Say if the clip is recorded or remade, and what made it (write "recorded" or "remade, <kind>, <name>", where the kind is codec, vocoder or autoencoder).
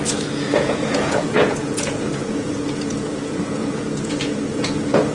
remade, vocoder, Vocos